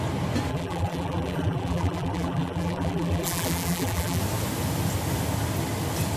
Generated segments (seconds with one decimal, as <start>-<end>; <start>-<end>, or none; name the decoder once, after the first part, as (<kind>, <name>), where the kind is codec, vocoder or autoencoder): 0.5-4.2 (vocoder, BigVGAN v2)